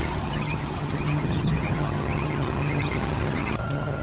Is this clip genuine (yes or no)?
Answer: no